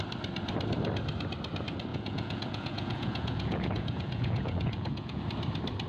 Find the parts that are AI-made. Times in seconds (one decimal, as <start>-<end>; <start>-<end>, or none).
1.9-5.2